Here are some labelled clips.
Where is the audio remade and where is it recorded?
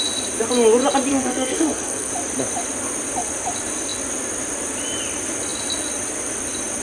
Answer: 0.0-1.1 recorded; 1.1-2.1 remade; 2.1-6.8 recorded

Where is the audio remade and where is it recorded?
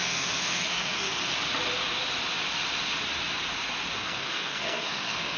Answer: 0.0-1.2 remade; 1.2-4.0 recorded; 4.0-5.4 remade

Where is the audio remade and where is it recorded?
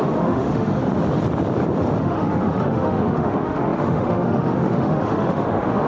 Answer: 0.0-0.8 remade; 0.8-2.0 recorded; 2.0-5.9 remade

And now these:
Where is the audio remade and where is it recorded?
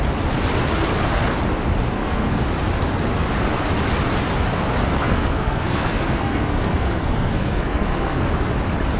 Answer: 0.0-1.9 recorded; 1.9-2.4 remade; 2.4-5.0 recorded; 5.0-8.3 remade; 8.3-9.0 recorded